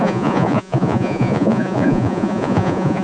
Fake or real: fake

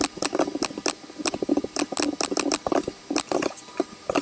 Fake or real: real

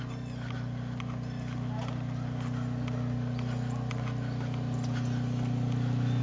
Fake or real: real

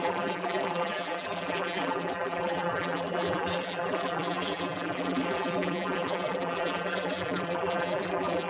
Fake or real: fake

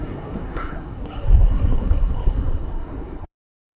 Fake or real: fake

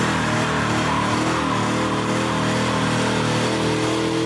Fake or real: real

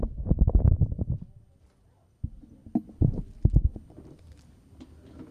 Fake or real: real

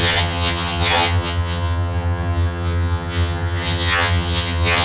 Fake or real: fake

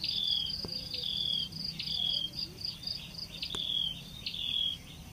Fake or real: real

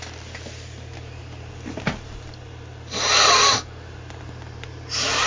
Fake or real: real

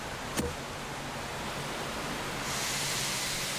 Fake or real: real